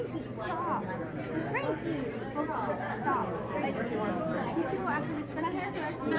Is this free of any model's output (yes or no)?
yes